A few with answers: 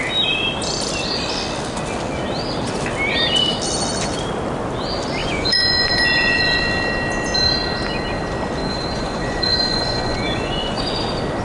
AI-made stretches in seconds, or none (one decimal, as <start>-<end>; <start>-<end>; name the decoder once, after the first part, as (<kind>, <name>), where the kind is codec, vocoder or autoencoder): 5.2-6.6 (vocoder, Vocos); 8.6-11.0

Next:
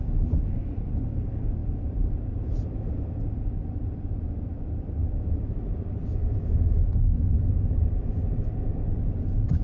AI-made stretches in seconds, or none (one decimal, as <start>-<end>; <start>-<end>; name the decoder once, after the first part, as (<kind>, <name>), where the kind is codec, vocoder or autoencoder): 5.0-5.5 (autoencoder, DAC-VAE); 6.1-7.8

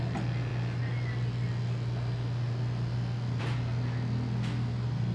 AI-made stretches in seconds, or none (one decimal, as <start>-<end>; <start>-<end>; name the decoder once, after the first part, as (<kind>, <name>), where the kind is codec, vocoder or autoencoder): none

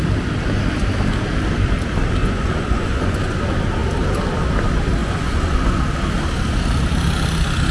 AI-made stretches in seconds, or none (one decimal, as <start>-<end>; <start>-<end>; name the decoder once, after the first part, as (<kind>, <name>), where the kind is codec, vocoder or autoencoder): 2.2-3.4 (vocoder, Vocos); 5.0-5.8

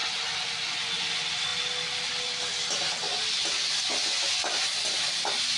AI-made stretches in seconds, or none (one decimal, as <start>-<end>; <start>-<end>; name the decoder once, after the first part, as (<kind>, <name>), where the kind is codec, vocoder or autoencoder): none